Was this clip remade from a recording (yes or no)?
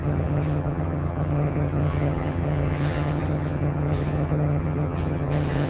yes